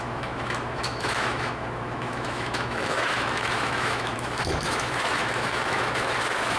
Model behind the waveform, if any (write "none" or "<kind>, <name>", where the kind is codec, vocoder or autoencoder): autoencoder, DAC-VAE